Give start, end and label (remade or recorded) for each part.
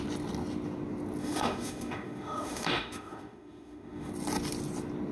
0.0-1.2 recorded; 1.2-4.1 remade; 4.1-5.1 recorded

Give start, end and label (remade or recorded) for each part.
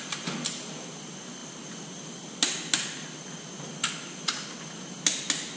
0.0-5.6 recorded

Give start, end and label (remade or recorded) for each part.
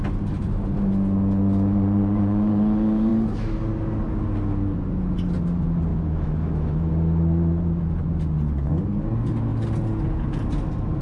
0.0-5.9 recorded; 5.9-6.9 remade; 6.9-11.0 recorded